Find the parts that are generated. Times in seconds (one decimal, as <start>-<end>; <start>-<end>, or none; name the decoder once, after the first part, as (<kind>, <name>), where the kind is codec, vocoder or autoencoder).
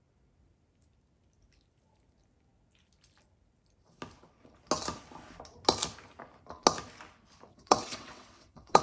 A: 7.5-8.8 (vocoder, WaveNeXt)